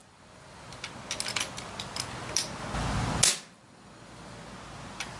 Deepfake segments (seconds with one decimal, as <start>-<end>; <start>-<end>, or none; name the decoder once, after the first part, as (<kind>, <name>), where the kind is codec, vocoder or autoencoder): none